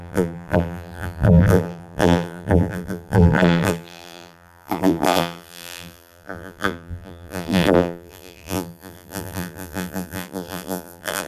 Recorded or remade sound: remade